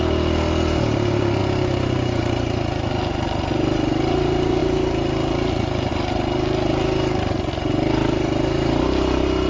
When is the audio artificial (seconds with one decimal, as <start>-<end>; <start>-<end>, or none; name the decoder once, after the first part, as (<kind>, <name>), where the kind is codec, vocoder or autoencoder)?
none